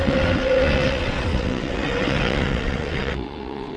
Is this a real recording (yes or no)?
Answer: no